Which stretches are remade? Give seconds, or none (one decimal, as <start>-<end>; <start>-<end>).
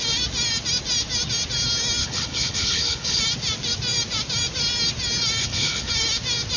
2.0-3.2; 5.4-5.9